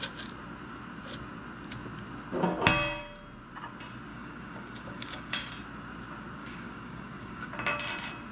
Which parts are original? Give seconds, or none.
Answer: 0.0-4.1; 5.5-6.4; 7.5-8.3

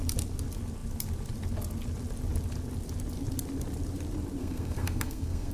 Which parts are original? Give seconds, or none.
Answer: 0.0-4.4

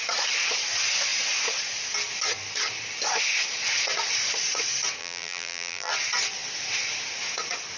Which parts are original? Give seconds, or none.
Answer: 0.0-5.0; 5.9-7.8